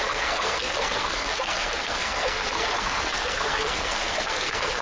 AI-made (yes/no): yes